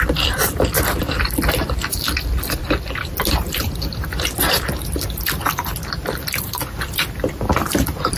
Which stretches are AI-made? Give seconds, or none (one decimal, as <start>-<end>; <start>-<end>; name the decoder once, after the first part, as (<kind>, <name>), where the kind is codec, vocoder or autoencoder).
0.0-2.6 (vocoder, BigVGAN v2); 6.3-8.2